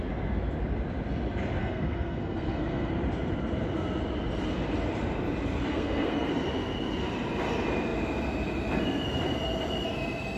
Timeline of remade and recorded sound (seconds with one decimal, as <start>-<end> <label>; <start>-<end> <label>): 0.0-1.6 recorded; 1.6-2.9 remade; 2.9-5.7 recorded; 5.7-6.3 remade; 6.3-10.4 recorded